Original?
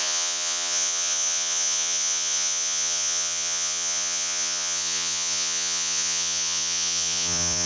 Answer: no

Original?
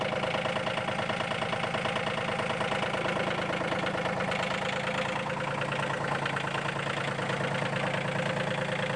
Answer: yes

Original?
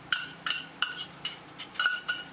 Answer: no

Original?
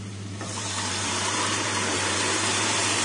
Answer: no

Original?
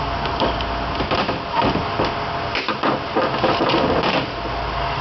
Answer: yes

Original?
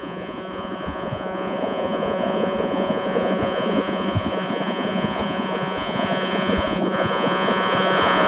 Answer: no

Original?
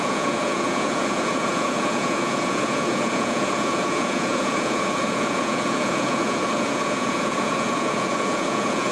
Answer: no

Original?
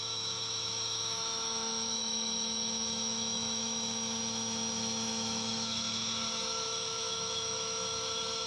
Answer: no